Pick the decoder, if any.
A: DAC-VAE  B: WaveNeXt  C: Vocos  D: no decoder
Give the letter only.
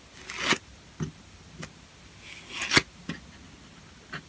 D